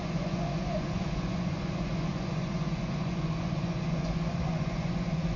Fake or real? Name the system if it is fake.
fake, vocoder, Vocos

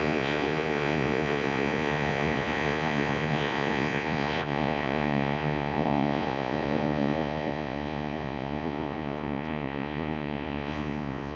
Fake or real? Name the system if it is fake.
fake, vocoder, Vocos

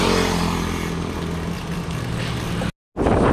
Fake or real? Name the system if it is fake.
real